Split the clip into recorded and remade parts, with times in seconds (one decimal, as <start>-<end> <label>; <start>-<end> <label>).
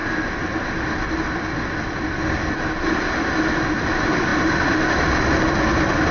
0.0-6.1 recorded